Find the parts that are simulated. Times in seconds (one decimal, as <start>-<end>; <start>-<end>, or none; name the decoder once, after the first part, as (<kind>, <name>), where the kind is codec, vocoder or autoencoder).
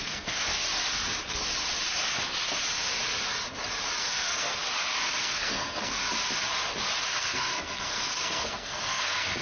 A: 0.0-0.5 (codec, SNAC); 4.0-4.6; 5.2-6.0; 7.2-9.4